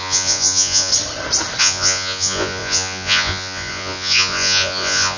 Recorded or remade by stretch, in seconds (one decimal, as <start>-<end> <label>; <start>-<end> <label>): 0.0-0.9 remade; 0.9-1.6 recorded; 1.6-5.2 remade